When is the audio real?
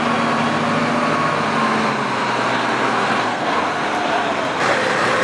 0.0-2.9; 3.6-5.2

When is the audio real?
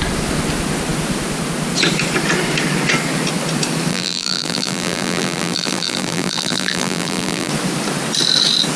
0.0-3.9; 7.5-8.8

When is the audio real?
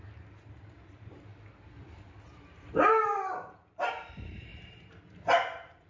1.3-3.5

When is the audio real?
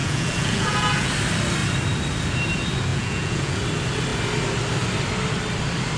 1.1-2.9; 3.6-6.0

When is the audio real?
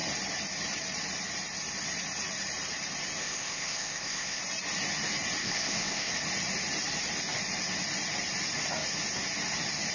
0.0-3.2; 4.4-5.4; 6.1-9.9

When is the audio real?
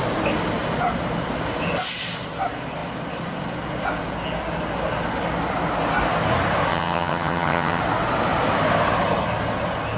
0.0-6.7; 7.8-10.0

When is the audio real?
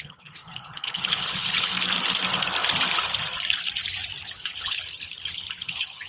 1.7-4.2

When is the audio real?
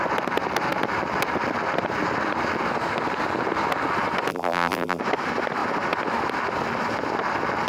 0.0-4.3; 5.0-7.7